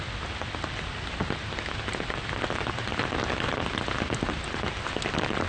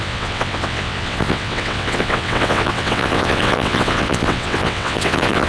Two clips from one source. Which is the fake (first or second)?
second